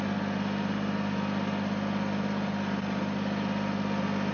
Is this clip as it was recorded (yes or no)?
yes